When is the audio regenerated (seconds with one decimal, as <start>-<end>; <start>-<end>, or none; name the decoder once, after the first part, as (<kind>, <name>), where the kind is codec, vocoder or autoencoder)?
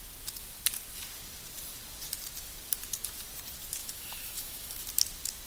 3.8-4.8 (autoencoder, DAC-VAE)